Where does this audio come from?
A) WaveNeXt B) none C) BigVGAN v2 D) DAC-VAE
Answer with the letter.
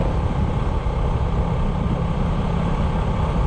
B